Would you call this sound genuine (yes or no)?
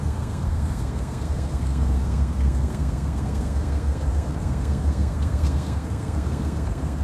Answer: no